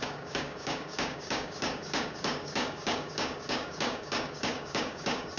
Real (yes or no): no